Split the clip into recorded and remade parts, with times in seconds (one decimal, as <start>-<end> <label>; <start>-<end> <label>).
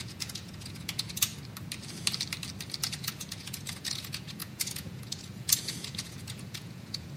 0.0-1.3 remade; 1.3-2.8 recorded; 2.8-7.2 remade